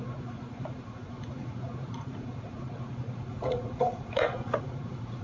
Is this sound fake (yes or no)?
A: yes